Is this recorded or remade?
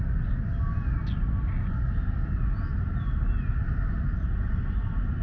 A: recorded